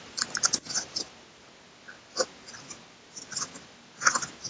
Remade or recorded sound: recorded